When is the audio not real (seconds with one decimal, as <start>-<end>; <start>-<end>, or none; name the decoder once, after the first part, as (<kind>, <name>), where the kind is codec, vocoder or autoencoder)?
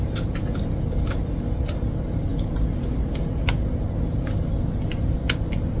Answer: none